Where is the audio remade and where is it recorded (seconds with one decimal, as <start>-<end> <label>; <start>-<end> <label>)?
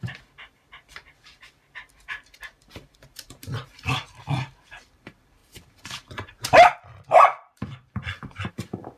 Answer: 0.0-9.0 remade